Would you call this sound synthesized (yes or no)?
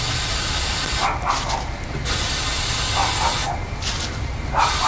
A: no